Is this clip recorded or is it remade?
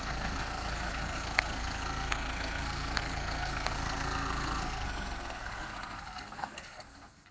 remade